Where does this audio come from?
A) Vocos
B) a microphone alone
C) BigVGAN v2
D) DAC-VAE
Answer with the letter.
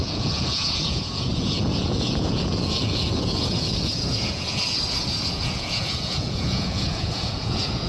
A